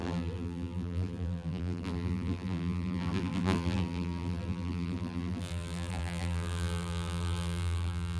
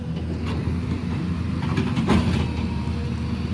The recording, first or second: second